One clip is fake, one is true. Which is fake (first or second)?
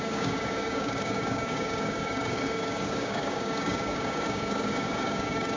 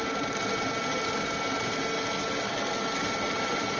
first